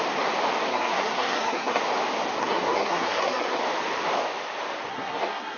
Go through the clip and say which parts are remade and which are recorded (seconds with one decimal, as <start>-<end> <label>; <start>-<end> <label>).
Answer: 0.0-0.7 recorded; 0.7-1.8 remade; 1.8-2.4 recorded; 2.4-3.6 remade; 3.6-4.9 recorded; 4.9-5.6 remade